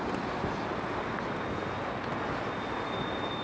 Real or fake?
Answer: real